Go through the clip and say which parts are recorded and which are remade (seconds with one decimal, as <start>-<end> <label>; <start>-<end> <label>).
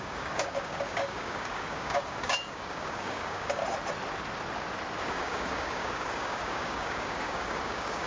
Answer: 0.0-3.6 remade; 3.6-5.1 recorded; 5.1-8.1 remade